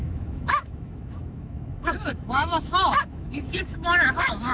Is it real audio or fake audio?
fake